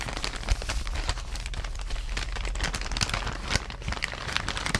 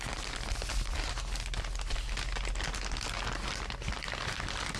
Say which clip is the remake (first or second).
first